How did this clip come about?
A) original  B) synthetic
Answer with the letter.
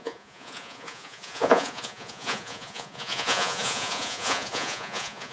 B